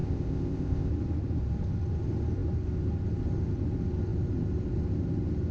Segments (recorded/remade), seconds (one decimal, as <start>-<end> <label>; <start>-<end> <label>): 0.0-0.9 remade; 0.9-5.5 recorded